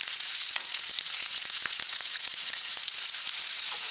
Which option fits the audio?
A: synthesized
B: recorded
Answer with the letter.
A